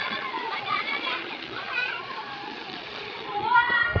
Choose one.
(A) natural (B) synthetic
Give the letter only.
B